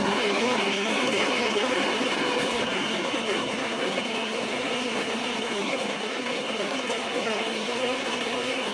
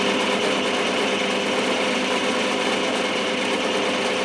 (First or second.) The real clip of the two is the second